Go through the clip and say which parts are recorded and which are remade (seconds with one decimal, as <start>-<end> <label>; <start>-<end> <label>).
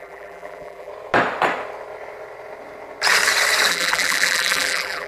0.0-0.9 remade; 0.9-3.7 recorded; 3.7-5.1 remade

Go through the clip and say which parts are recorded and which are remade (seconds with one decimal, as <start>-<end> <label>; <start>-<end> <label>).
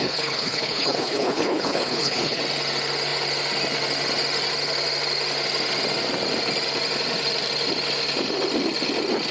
0.0-2.4 remade; 2.4-9.3 recorded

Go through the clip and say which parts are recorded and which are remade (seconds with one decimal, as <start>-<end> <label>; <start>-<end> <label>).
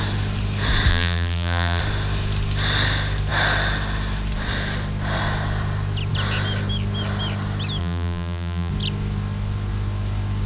0.0-0.9 recorded; 0.9-1.8 remade; 1.8-7.8 recorded; 7.8-8.7 remade; 8.7-10.5 recorded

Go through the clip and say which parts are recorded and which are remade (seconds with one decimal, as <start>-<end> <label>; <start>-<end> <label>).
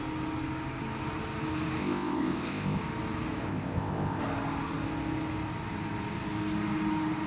0.0-1.8 recorded; 1.8-2.8 remade; 2.8-3.5 recorded; 3.5-4.2 remade; 4.2-7.3 recorded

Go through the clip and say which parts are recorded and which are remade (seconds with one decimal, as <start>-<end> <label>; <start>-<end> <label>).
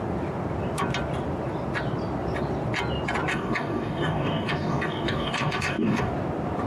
0.0-3.3 recorded; 3.3-6.1 remade; 6.1-6.7 recorded